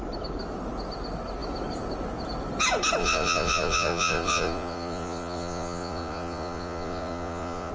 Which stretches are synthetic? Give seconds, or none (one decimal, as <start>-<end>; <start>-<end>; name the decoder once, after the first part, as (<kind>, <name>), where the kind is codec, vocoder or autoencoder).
3.0-7.7 (vocoder, Vocos)